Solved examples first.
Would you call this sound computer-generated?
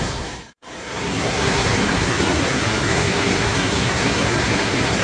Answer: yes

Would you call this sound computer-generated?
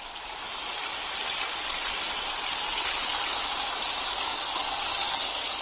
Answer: yes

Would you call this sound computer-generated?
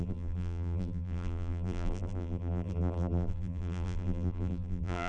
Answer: yes